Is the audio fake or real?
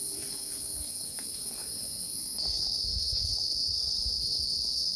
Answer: fake